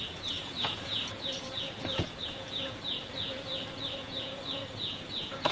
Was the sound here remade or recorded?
remade